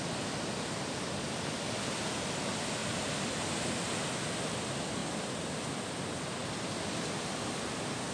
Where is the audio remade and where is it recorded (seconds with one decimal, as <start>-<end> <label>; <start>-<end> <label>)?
0.0-8.1 recorded